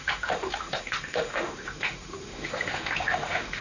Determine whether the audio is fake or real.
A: fake